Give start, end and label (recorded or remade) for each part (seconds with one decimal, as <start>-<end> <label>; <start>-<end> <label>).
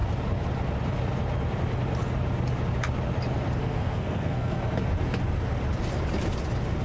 0.0-3.6 recorded; 3.6-4.6 remade; 4.6-6.8 recorded